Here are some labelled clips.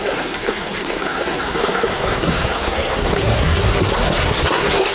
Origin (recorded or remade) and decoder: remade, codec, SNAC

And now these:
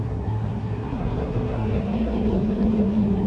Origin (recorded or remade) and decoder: remade, codec, SNAC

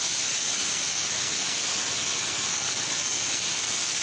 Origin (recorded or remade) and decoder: remade, codec, SNAC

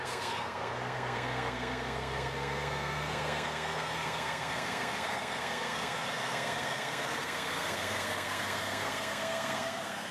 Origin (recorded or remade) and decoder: remade, codec, SNAC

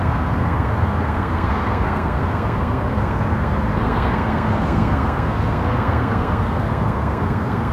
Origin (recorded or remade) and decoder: remade, codec, SNAC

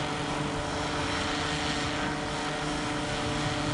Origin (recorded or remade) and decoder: recorded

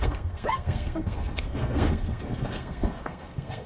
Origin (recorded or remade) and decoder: remade, codec, SNAC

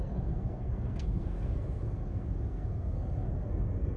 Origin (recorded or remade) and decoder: remade, codec, SNAC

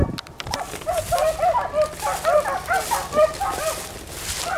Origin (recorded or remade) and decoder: recorded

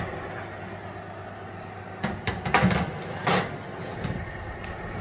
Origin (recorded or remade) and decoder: recorded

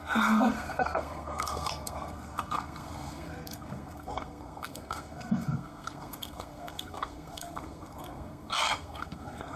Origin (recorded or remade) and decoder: remade, codec, SNAC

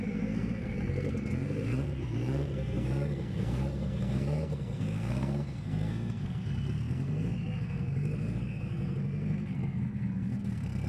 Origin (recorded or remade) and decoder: remade, codec, SNAC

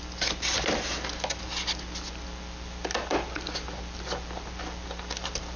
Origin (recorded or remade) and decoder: recorded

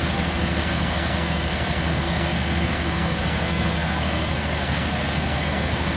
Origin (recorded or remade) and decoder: remade, codec, SNAC